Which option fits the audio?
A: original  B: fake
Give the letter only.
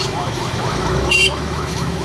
B